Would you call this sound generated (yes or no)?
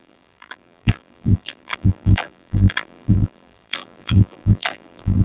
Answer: yes